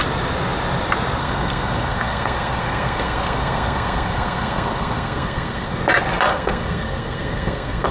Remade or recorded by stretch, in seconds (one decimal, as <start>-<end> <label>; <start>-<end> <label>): 0.0-1.2 recorded; 1.2-5.8 remade; 5.8-6.3 recorded; 6.3-7.9 remade